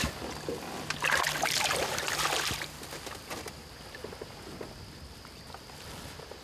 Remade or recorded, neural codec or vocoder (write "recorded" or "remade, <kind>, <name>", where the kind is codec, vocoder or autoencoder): recorded